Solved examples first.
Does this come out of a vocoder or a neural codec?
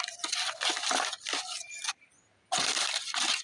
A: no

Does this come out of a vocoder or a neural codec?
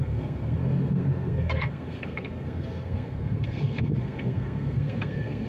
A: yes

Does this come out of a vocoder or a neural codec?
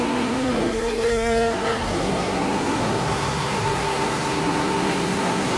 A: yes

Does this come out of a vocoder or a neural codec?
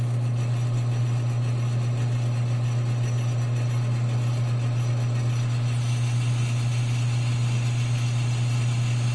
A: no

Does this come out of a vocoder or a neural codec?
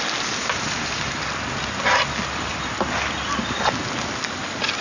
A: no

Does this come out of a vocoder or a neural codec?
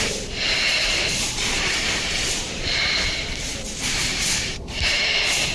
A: yes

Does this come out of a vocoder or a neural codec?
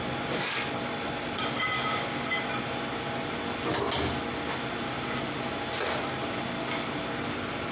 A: no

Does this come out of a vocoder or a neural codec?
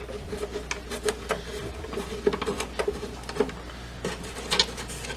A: no